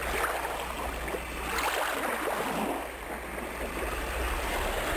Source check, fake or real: real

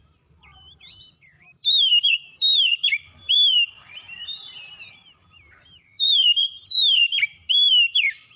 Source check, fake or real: fake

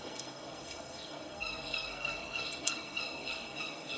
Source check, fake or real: fake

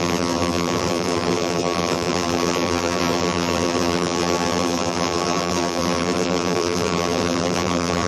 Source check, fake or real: fake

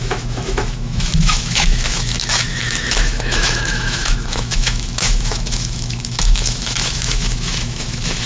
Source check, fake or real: fake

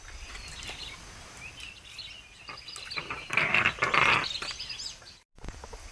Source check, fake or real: real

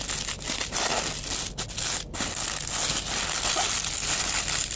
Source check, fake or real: real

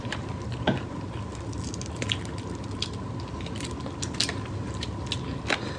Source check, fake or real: real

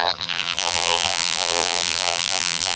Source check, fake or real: fake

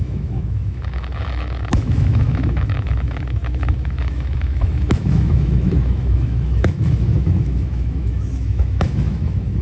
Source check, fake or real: fake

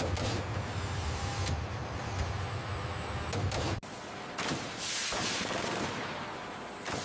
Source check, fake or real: real